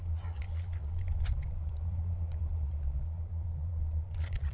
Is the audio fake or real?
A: fake